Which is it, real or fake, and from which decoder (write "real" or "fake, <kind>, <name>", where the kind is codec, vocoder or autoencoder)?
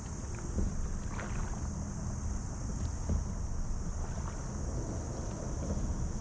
real